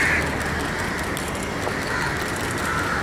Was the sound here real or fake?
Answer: real